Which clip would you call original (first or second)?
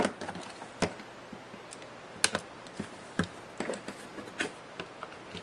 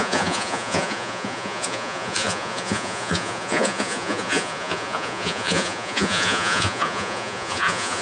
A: first